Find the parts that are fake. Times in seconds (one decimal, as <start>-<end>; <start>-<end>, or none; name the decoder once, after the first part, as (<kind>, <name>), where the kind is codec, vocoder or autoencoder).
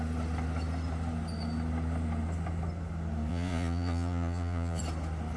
3.3-4.8 (vocoder, Vocos)